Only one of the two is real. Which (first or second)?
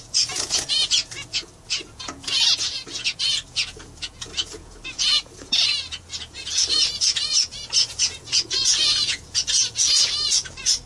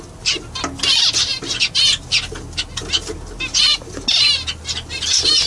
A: second